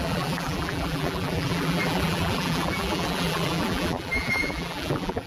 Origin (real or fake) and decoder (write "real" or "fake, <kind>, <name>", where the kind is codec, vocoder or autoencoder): fake, vocoder, BigVGAN v2